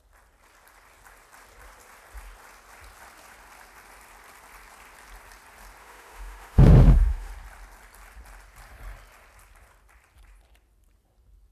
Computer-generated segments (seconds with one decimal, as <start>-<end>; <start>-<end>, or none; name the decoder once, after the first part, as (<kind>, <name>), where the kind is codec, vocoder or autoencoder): 5.8-7.3 (autoencoder, DAC-VAE)